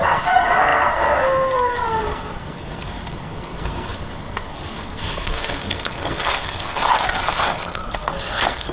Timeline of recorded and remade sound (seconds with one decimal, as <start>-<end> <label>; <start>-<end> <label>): 0.0-8.7 remade